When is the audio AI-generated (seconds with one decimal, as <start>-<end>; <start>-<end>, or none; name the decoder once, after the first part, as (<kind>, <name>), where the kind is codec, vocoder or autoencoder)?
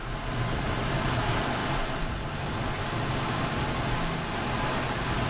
none